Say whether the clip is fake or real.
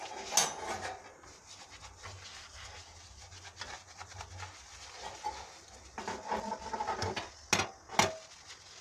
real